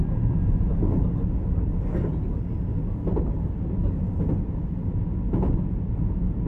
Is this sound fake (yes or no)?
no